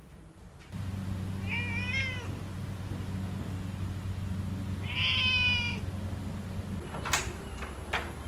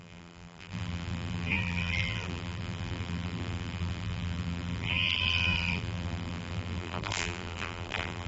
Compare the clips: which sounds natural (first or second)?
first